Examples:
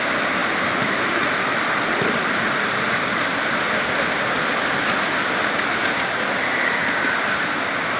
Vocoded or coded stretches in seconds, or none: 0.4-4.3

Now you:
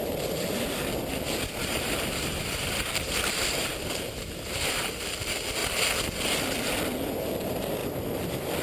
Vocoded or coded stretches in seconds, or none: 1.6-4.8

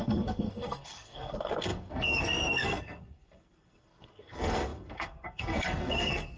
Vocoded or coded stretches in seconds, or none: 0.0-6.4

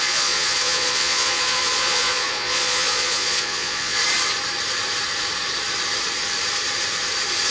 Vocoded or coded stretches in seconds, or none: 0.0-4.0

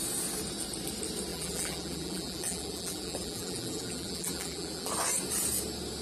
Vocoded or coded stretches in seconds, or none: 1.3-4.9

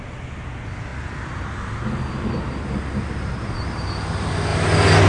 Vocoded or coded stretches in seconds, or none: none

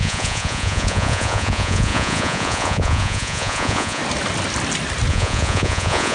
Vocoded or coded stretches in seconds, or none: 0.0-4.0; 5.1-6.1